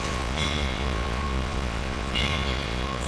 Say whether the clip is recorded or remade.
remade